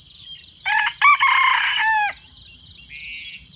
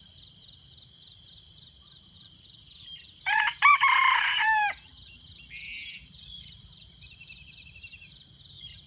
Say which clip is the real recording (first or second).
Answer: first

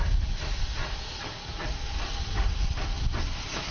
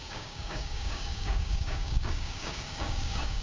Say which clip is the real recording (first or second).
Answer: first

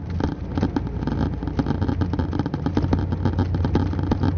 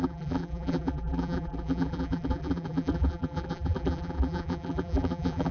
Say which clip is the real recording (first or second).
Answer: first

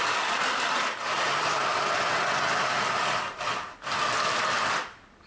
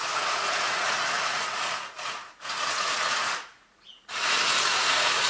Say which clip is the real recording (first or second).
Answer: first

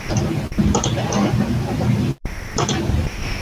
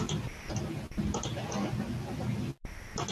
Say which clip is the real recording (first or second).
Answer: second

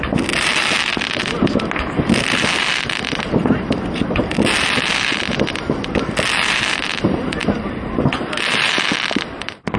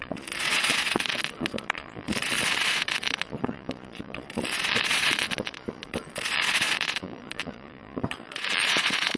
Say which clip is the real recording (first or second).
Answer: first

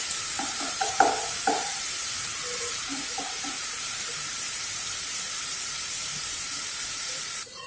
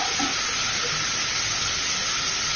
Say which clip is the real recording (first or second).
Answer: second